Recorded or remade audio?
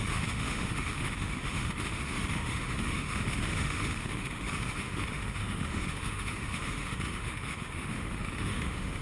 remade